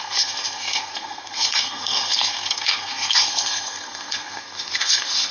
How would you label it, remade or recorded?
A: remade